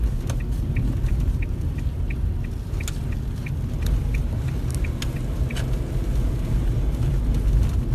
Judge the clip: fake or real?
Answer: real